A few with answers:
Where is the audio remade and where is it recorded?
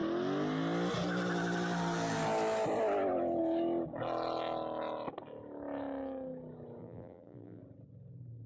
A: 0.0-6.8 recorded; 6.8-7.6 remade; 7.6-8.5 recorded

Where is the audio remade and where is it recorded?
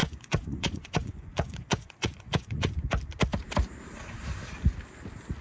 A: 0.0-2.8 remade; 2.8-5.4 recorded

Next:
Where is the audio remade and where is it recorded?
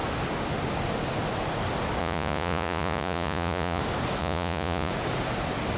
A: 0.0-2.0 recorded; 2.0-3.8 remade; 3.8-4.2 recorded; 4.2-4.9 remade; 4.9-5.8 recorded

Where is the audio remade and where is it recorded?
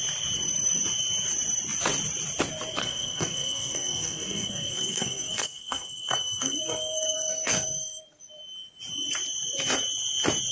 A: 0.0-2.8 recorded; 2.8-8.0 remade; 8.0-10.5 recorded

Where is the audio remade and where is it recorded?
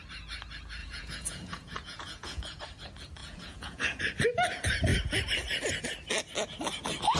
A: 0.0-0.8 recorded; 0.8-2.6 remade; 2.6-3.2 recorded; 3.2-4.0 remade; 4.0-7.2 recorded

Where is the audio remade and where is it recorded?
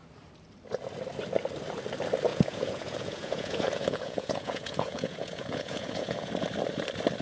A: 0.0-2.3 recorded; 2.3-6.3 remade; 6.3-7.2 recorded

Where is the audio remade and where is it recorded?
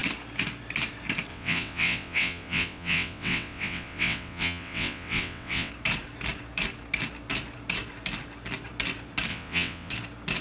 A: 0.0-1.3 recorded; 1.3-5.7 remade; 5.7-9.3 recorded; 9.3-9.9 remade; 9.9-10.4 recorded